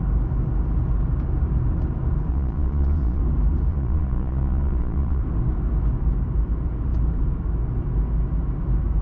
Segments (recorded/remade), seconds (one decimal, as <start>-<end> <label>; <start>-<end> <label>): 0.0-2.3 recorded; 2.3-3.2 remade; 3.2-3.7 recorded; 3.7-5.2 remade; 5.2-9.0 recorded